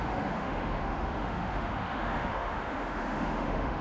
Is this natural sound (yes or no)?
no